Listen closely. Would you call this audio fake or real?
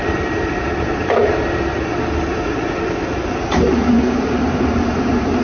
fake